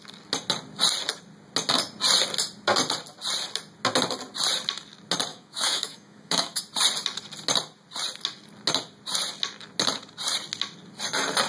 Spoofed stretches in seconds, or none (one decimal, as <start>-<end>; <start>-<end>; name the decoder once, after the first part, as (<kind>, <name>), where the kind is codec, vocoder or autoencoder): 5.3-6.6 (autoencoder, DAC-VAE)